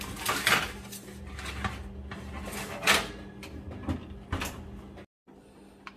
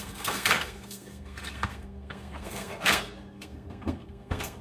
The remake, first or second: second